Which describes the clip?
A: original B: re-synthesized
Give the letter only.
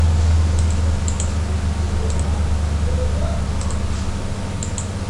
A